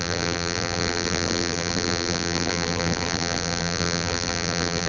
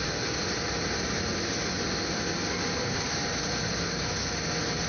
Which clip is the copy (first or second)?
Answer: first